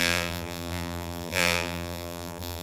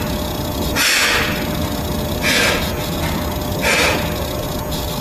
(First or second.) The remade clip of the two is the first